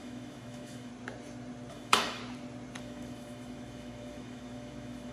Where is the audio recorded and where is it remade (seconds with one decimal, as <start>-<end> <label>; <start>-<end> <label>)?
0.0-0.9 remade; 0.9-1.7 recorded; 1.7-2.2 remade; 2.2-2.8 recorded; 2.8-5.1 remade